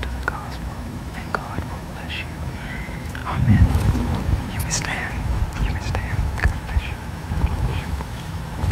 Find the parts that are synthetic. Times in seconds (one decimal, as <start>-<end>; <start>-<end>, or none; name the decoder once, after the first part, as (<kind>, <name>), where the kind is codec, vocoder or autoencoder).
0.0-5.4 (autoencoder, DAC-VAE); 5.9-8.7